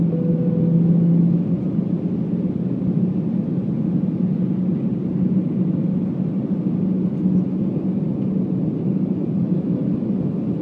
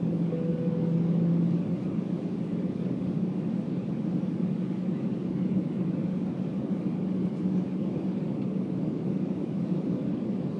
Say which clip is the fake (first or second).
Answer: second